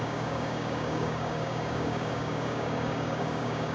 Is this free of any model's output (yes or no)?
no